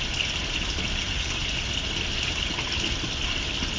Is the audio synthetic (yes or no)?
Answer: no